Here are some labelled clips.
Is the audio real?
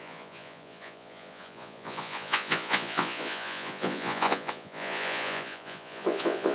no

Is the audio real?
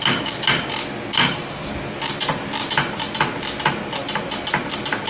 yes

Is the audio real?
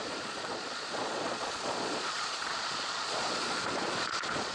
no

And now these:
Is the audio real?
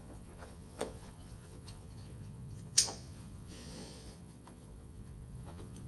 no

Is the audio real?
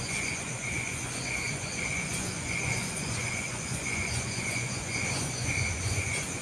no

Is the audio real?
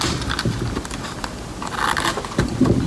yes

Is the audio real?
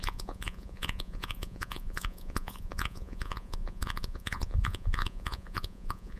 no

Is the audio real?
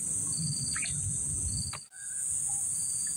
yes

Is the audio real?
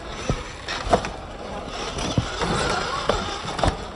yes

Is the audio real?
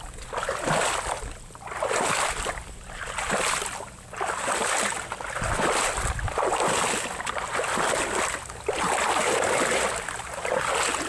yes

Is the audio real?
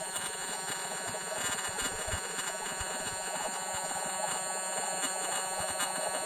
no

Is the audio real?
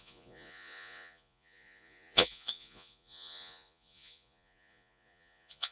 no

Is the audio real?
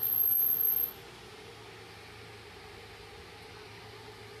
yes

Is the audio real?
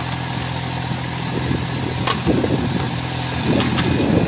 yes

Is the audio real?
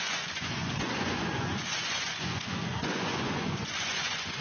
no